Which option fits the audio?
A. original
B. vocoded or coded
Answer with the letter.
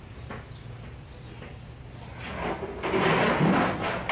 A